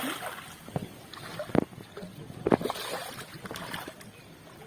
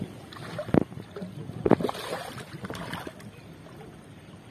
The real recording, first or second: first